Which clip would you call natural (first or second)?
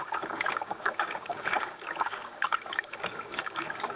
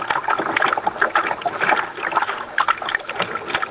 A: second